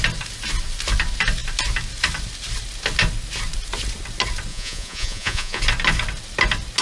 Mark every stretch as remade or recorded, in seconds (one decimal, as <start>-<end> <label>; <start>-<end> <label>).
0.0-4.5 recorded; 4.5-5.6 remade; 5.6-6.8 recorded